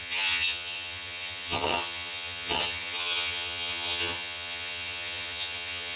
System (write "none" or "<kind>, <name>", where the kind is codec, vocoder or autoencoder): vocoder, HiFi-GAN